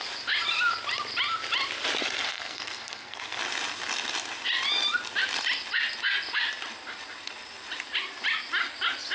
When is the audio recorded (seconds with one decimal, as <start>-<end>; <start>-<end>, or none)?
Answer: 0.0-2.2; 3.4-9.1